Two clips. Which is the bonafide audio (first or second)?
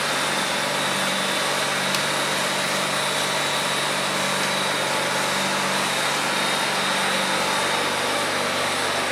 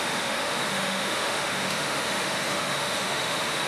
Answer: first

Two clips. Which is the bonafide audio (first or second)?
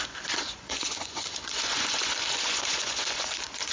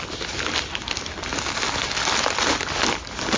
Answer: second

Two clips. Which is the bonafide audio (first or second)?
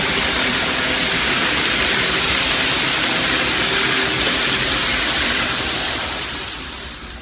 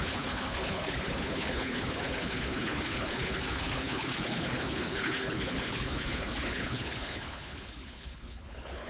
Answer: first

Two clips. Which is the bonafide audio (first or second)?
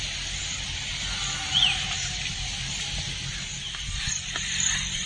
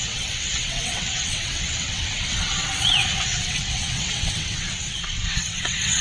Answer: first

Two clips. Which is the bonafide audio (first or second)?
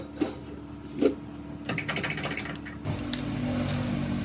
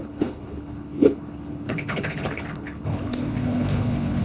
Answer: first